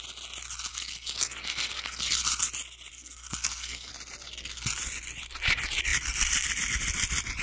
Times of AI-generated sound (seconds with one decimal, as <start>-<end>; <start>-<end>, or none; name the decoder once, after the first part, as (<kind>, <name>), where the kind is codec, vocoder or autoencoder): 0.7-2.1 (codec, SNAC); 2.9-3.9